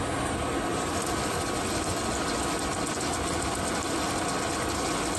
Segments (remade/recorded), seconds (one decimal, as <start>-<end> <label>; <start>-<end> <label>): 0.0-0.7 recorded; 0.7-1.2 remade; 1.2-5.2 recorded